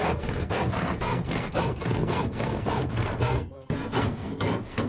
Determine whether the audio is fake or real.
fake